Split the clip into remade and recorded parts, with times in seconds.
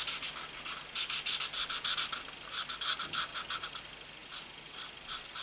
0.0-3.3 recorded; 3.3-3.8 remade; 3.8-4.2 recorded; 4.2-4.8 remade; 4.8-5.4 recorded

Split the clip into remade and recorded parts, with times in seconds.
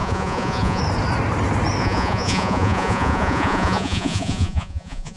0.0-0.8 remade; 0.8-1.8 recorded; 1.8-5.2 remade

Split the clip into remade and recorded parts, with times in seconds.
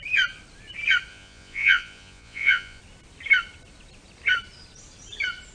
0.0-1.1 recorded; 1.1-2.8 remade; 2.8-5.5 recorded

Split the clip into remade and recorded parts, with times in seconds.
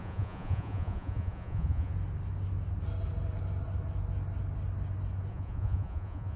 0.0-1.9 remade; 1.9-5.3 recorded; 5.3-6.4 remade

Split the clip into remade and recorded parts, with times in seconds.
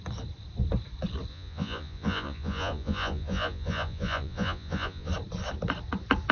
0.0-1.3 recorded; 1.3-5.1 remade; 5.1-6.3 recorded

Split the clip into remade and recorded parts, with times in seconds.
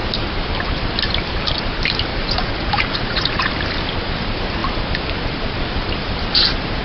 0.0-2.1 recorded; 2.1-3.5 remade; 3.5-6.8 recorded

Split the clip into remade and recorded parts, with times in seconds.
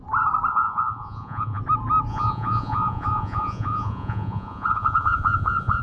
0.0-0.5 recorded; 0.5-1.6 remade; 1.6-2.1 recorded; 2.1-5.8 remade